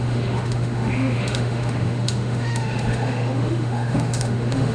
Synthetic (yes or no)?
yes